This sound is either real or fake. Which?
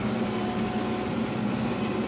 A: real